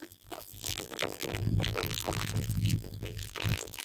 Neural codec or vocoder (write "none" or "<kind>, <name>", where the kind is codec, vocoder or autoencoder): vocoder, BigVGAN v2